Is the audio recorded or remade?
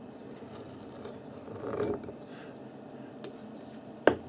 recorded